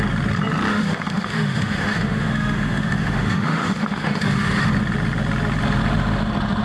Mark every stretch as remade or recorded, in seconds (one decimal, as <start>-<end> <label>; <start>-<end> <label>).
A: 0.0-0.7 recorded; 0.7-4.7 remade; 4.7-6.6 recorded